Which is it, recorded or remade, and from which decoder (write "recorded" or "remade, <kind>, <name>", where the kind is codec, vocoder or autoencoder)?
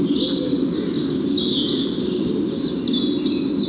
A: recorded